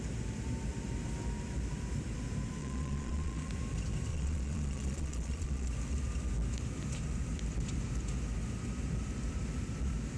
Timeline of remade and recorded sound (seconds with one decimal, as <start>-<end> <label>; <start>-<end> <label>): 0.0-2.6 recorded; 2.6-3.5 remade; 3.5-4.1 recorded; 4.1-5.7 remade; 5.7-10.2 recorded